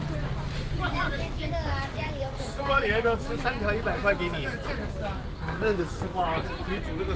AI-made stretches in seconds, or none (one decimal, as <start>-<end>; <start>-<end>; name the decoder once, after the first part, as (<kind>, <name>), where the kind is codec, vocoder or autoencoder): 0.7-3.4 (codec, DAC); 4.8-6.2